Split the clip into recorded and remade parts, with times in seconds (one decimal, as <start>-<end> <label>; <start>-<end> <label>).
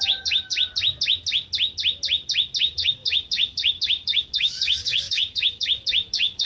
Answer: 0.0-0.5 remade; 0.5-2.6 recorded; 2.6-6.5 remade